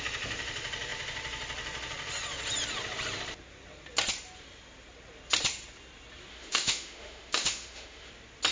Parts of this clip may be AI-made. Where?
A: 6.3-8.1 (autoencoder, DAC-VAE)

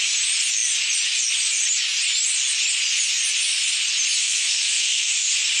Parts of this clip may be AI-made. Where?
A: 4.2-5.1 (codec, SNAC)

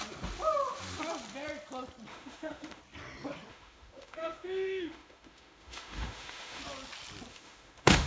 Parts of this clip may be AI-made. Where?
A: 2.1-2.8 (autoencoder, DAC-VAE); 3.5-6.6; 7.3-8.1

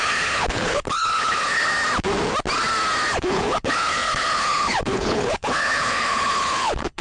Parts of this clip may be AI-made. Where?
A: 0.0-1.7 (codec, HILCodec); 3.1-7.0

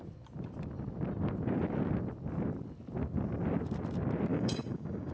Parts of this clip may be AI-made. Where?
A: 4.3-5.1 (codec, DAC)